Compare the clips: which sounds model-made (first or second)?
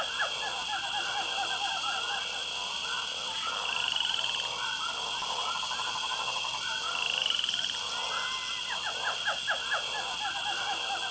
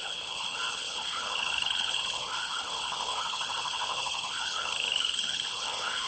second